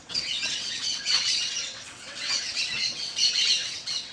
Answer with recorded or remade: remade